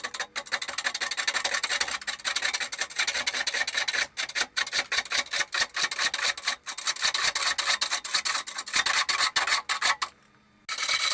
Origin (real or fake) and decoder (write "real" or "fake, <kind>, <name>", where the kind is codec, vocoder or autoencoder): real